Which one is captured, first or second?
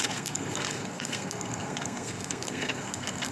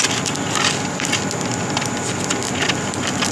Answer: second